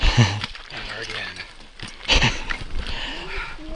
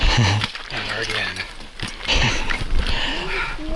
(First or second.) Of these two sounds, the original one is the second